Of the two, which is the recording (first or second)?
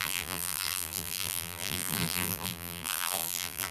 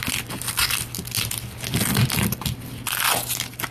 second